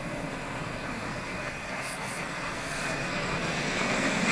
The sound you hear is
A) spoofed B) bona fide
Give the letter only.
A